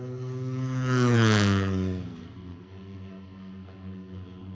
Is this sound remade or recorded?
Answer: remade